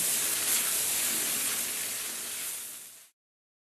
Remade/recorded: recorded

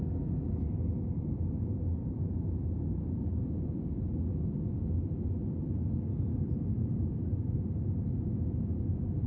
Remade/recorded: recorded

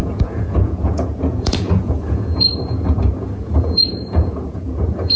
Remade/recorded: remade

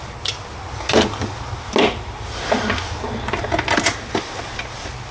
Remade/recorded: recorded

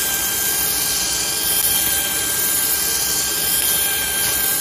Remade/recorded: remade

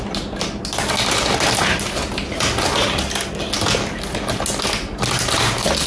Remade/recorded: recorded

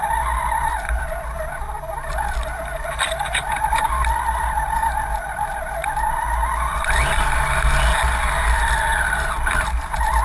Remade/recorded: recorded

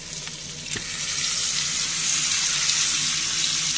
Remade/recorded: recorded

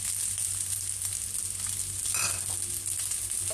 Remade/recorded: recorded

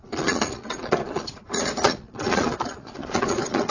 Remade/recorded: remade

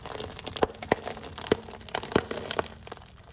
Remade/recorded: recorded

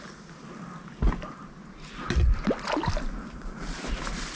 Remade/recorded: recorded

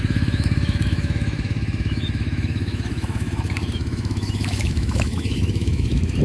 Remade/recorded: remade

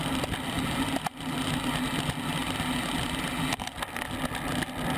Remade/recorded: recorded